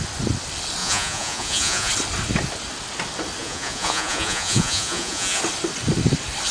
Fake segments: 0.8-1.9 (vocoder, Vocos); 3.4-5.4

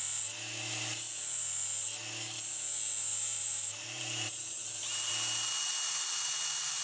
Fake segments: 3.1-5.1 (vocoder, BigVGAN v2)

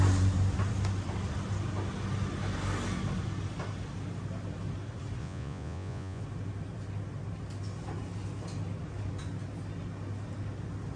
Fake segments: 5.2-6.2 (vocoder, Vocos)